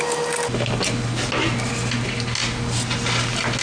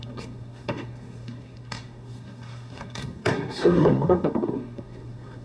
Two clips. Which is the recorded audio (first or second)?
first